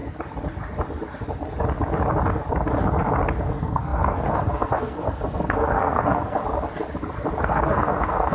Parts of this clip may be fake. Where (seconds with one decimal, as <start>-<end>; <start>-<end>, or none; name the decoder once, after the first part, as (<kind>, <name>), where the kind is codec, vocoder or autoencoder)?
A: 3.5-6.4 (codec, SNAC); 7.4-8.3